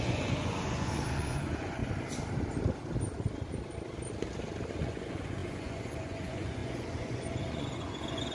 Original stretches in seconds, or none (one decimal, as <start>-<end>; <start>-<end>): 1.8-4.7